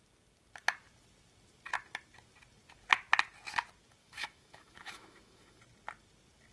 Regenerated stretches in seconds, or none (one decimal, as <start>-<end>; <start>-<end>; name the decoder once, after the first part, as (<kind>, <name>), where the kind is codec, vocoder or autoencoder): 4.0-5.6 (autoencoder, DAC-VAE)